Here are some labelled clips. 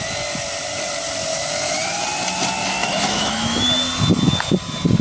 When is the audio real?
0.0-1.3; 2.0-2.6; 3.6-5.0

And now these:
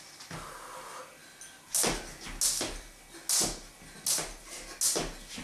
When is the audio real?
0.0-5.4

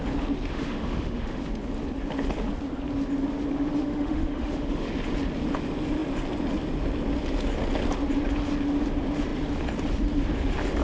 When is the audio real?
0.0-0.5; 1.4-3.8; 4.9-10.8